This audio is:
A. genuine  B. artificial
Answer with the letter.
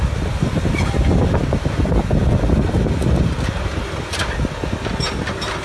A